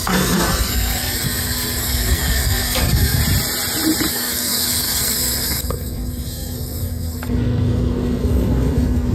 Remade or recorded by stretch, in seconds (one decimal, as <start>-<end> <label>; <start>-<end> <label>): 0.0-3.2 remade; 3.2-4.1 recorded; 4.1-9.1 remade